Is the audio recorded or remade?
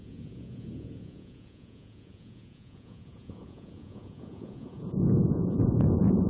remade